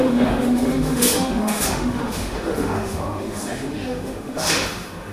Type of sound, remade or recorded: remade